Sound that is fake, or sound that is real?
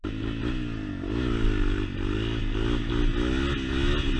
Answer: real